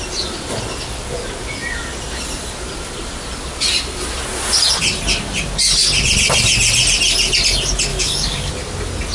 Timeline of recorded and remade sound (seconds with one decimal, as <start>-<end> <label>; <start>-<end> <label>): 0.0-7.9 recorded; 7.9-8.5 remade; 8.5-9.1 recorded